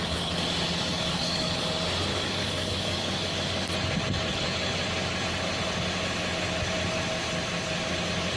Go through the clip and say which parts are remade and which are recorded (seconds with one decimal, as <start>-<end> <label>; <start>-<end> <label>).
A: 0.0-0.9 recorded; 0.9-1.7 remade; 1.7-2.1 recorded; 2.1-3.3 remade; 3.3-8.4 recorded